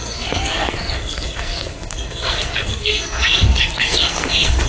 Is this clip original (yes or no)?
no